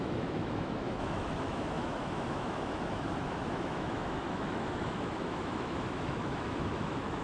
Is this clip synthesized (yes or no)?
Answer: yes